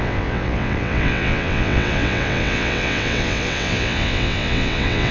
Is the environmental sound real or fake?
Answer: fake